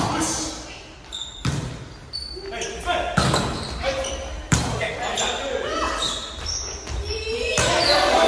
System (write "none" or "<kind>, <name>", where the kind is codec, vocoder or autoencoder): none